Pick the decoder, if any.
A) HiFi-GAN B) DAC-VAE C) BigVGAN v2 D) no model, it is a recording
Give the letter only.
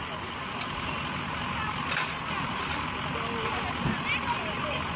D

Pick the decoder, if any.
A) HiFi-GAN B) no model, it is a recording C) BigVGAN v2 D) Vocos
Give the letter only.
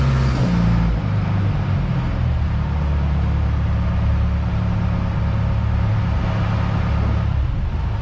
B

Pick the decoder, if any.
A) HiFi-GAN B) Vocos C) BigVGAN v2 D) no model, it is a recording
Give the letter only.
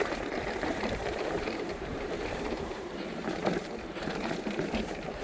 C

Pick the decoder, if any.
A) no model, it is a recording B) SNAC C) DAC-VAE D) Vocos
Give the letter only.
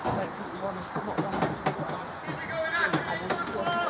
A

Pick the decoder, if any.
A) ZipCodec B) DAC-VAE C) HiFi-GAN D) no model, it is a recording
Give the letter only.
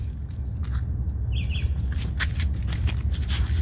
D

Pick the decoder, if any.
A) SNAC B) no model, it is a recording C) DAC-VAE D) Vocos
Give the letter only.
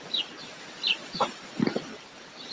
B